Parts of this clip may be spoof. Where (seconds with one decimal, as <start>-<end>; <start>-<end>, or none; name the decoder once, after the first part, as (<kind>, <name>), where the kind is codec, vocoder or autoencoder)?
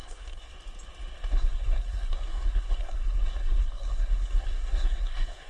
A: 0.0-0.5 (codec, SNAC); 1.3-5.5